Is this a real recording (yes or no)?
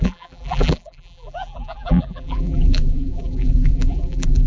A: no